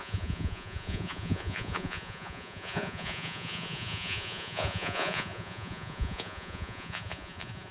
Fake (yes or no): yes